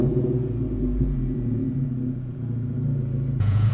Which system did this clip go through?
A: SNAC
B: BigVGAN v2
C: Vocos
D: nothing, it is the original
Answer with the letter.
C